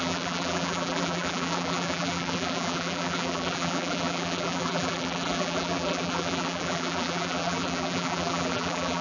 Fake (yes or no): yes